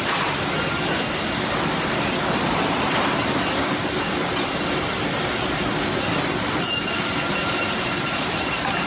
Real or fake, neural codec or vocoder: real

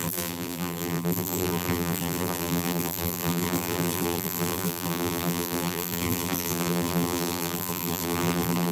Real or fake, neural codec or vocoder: fake, vocoder, BigVGAN v2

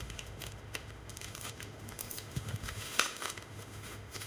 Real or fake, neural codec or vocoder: fake, autoencoder, DAC-VAE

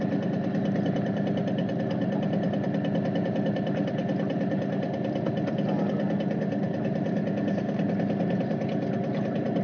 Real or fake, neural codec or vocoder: real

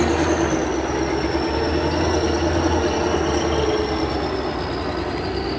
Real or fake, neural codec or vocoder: real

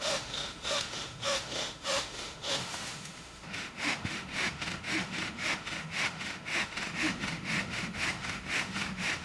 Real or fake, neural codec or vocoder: fake, autoencoder, DAC-VAE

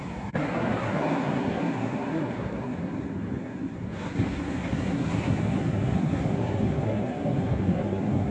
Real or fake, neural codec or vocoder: fake, codec, SNAC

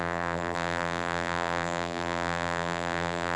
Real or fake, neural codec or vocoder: fake, vocoder, BigVGAN v2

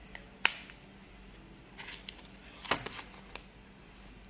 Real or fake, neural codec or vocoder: real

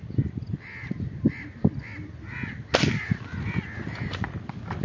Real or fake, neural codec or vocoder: real